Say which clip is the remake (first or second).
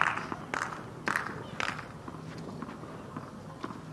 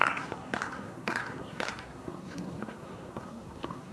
second